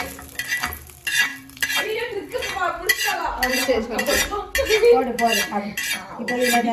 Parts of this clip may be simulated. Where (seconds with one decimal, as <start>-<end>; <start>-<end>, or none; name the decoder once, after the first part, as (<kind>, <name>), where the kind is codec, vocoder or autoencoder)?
1.3-2.0 (vocoder, BigVGAN v2); 3.1-4.1